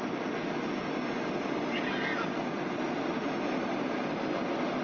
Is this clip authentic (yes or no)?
yes